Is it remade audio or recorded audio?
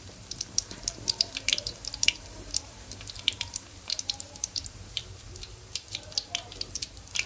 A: remade